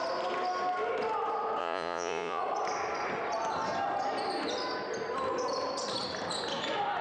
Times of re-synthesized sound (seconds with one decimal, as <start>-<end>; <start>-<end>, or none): 1.6-2.4